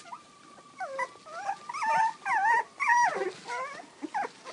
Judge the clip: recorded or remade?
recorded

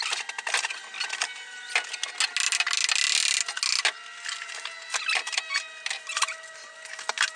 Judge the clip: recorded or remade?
recorded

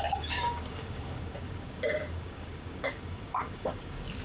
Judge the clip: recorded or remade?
remade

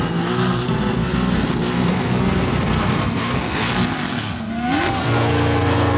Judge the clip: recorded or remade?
remade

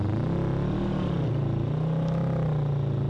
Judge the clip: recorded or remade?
recorded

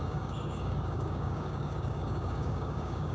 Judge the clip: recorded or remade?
remade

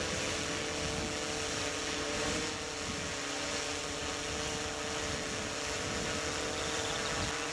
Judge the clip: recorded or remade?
recorded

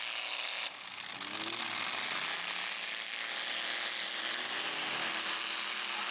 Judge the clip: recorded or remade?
recorded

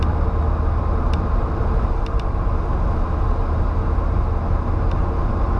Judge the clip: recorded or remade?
recorded